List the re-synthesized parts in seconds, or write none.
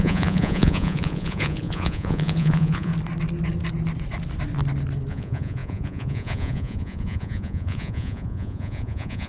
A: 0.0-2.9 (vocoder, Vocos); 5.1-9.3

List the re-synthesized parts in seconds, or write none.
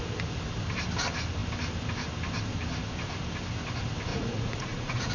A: 4.1-5.1 (vocoder, Vocos)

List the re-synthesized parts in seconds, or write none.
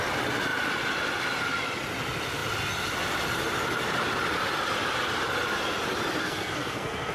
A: 6.2-7.1 (codec, SNAC)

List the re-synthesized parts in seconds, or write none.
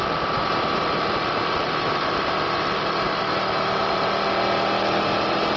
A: 3.2-3.8 (autoencoder, DAC-VAE)